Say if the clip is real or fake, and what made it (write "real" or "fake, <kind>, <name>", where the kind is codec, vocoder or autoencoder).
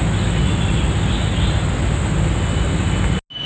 real